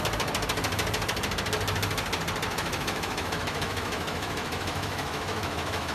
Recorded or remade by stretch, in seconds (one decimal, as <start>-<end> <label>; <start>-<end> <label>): 0.0-2.5 recorded; 2.5-5.9 remade